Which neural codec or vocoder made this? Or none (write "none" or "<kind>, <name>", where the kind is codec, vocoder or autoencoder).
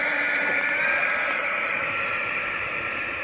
vocoder, BigVGAN v2